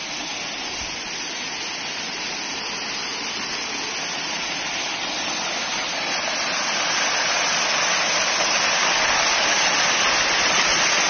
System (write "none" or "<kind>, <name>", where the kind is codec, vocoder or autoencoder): none